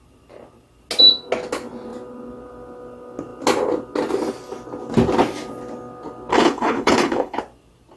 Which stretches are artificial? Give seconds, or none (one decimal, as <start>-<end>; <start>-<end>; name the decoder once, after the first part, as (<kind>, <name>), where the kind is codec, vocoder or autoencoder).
6.3-7.4 (codec, HILCodec)